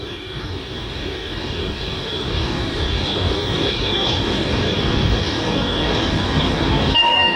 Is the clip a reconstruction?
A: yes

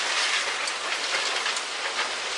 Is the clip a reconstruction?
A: no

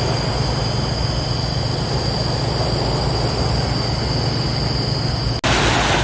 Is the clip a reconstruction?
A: no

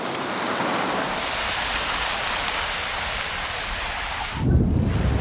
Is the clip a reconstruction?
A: no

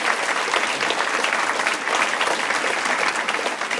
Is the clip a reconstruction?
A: no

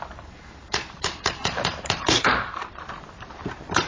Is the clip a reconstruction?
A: yes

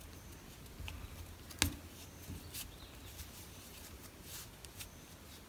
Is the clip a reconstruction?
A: no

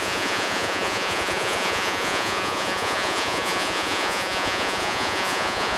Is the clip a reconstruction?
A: yes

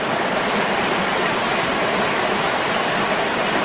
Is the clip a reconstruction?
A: no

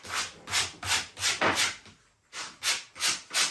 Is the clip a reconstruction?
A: no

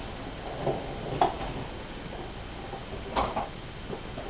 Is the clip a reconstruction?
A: no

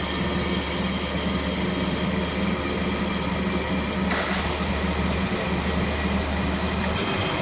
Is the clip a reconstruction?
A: no